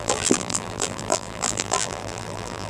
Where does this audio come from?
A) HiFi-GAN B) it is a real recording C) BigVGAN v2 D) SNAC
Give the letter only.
C